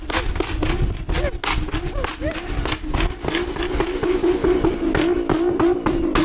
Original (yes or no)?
yes